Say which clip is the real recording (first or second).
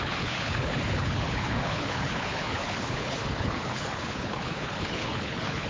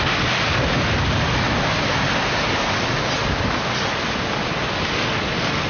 second